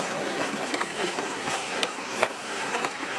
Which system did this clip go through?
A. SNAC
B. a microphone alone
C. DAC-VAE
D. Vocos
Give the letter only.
A